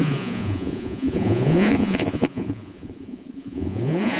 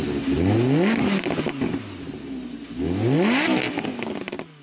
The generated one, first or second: first